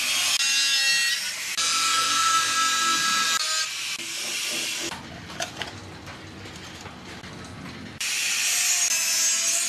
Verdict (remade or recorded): recorded